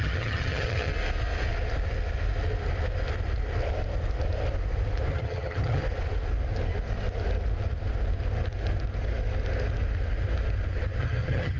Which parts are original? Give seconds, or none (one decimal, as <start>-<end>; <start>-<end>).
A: 0.9-5.1; 5.8-11.0